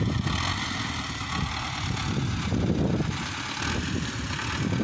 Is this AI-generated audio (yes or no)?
no